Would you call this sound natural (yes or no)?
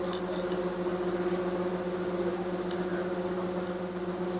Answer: yes